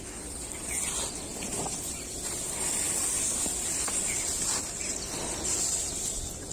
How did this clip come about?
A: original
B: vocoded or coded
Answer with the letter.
A